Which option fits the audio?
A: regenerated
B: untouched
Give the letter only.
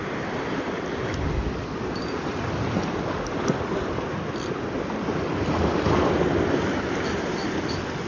B